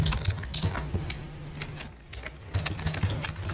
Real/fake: real